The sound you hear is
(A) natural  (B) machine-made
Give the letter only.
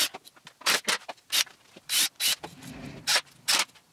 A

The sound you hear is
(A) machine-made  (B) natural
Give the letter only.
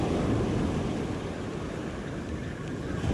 B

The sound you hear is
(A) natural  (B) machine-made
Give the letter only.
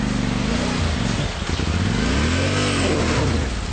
A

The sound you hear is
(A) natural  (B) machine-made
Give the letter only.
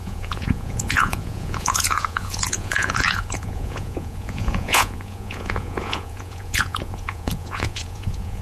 B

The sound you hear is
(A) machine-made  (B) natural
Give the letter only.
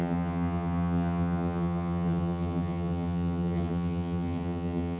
A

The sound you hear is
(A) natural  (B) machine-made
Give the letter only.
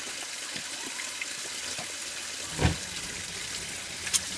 A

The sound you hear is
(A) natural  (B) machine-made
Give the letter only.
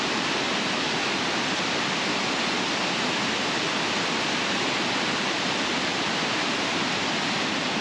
A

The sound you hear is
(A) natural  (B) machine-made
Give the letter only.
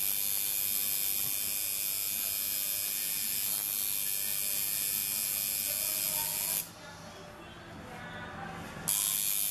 A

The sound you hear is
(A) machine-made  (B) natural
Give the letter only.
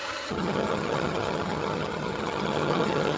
A